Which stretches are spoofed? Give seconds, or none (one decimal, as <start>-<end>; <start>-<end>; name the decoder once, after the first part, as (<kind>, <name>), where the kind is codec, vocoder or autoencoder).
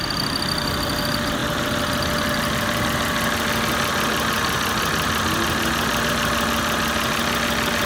none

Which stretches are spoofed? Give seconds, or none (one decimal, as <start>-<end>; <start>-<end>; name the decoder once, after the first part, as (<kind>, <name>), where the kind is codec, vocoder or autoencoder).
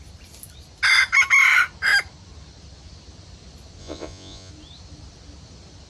3.8-4.5 (vocoder, Vocos)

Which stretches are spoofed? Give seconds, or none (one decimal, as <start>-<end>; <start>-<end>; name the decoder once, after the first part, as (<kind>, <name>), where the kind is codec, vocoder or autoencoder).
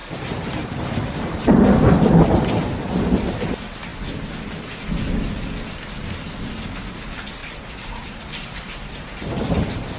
0.0-2.5 (vocoder, BigVGAN v2); 7.4-9.1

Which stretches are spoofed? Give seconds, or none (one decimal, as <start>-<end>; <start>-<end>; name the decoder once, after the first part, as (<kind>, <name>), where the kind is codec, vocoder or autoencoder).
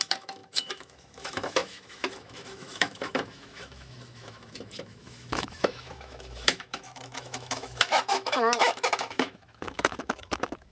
0.0-10.7 (autoencoder, DAC-VAE)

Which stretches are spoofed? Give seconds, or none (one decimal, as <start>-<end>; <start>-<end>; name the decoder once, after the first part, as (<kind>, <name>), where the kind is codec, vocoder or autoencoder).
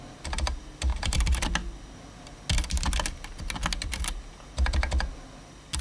0.9-1.4 (vocoder, BigVGAN v2)